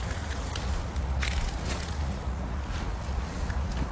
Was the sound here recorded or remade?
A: remade